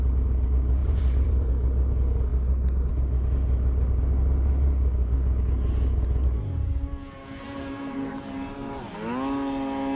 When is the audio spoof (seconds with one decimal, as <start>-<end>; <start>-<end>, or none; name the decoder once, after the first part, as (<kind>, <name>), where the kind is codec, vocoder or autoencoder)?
0.8-1.5 (vocoder, BigVGAN v2)